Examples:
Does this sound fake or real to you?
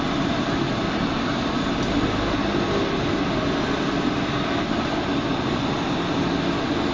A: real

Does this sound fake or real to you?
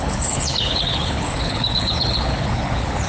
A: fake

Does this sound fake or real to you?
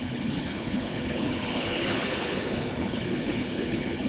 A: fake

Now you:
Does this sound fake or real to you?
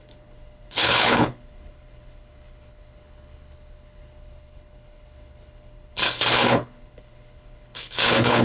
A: fake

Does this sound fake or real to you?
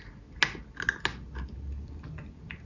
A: real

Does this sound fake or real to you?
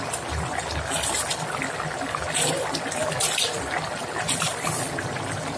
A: real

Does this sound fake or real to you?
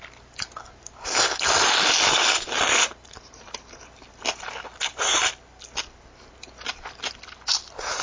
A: real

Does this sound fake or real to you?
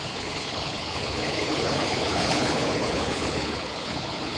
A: fake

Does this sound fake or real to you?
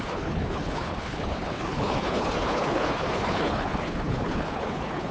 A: fake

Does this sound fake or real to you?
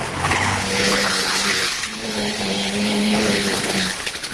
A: fake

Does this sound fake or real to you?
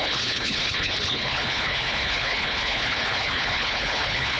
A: fake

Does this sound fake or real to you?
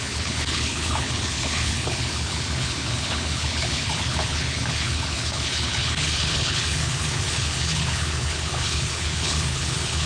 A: fake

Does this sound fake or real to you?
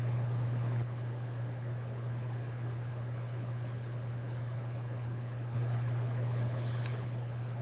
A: fake